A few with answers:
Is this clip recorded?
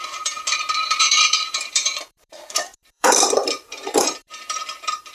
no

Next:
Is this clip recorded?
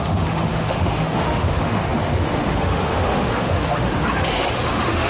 no